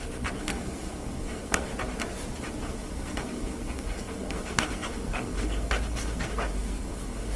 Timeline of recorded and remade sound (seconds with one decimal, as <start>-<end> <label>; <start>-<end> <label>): 0.0-1.7 remade; 1.7-2.6 recorded; 2.6-7.4 remade